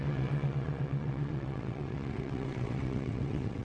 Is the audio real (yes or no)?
no